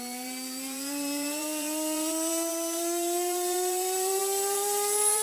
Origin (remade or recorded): remade